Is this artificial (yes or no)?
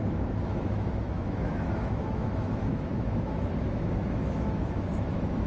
yes